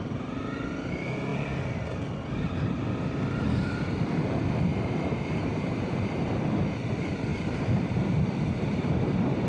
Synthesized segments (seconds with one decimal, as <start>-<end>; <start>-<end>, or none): 4.7-6.3; 7.3-9.5